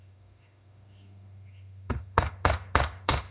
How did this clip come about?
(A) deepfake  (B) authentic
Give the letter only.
A